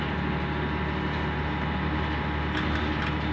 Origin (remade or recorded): recorded